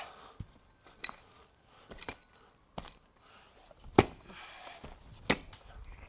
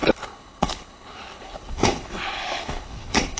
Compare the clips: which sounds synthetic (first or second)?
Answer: second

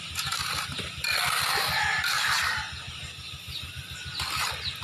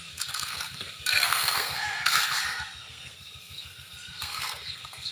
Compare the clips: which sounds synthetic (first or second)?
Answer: second